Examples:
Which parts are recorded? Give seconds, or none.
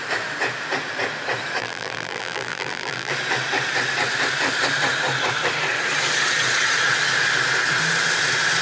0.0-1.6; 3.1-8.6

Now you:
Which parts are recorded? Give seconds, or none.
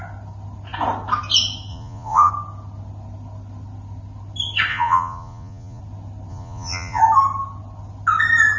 0.0-1.7; 2.3-4.7; 5.8-6.3; 7.0-8.6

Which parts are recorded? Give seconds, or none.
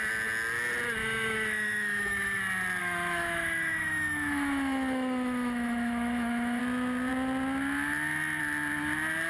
0.0-1.0; 2.4-2.8; 6.6-9.3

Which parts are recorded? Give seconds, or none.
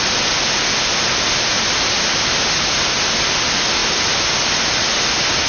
0.0-5.5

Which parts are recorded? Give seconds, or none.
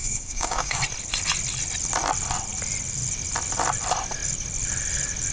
0.8-5.3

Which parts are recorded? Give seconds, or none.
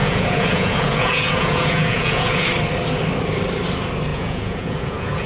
2.5-4.1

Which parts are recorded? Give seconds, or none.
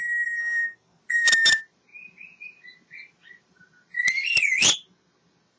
0.0-0.4; 1.0-5.6